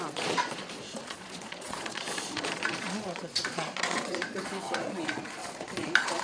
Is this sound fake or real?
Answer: fake